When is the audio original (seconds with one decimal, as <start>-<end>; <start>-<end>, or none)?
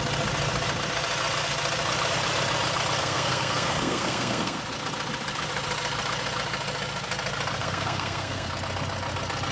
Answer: 0.0-3.0; 4.6-7.6; 8.5-9.5